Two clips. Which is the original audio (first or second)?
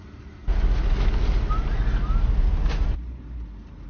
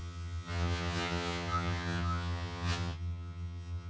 first